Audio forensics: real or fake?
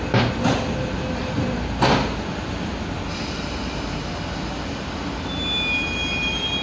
real